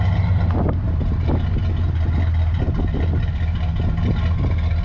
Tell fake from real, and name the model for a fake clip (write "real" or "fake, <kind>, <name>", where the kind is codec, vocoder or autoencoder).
real